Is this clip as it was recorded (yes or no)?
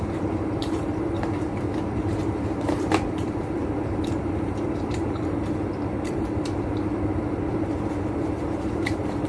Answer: no